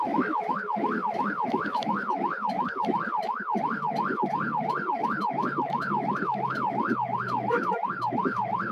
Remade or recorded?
remade